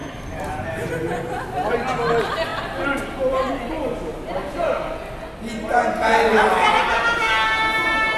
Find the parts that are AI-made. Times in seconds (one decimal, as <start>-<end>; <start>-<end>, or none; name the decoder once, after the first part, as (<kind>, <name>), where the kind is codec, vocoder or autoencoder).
0.0-0.9 (vocoder, BigVGAN v2); 6.3-7.3